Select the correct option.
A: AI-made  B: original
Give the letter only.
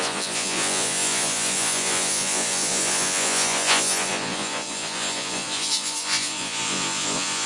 A